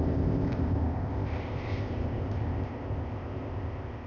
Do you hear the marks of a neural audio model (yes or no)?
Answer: yes